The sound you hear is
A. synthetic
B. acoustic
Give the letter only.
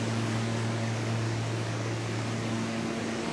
A